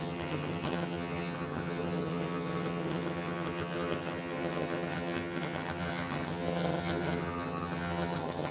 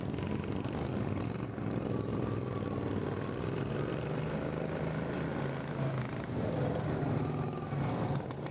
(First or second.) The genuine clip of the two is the second